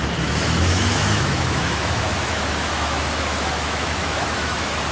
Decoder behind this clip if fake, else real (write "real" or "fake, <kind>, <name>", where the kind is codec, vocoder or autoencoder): fake, autoencoder, DAC-VAE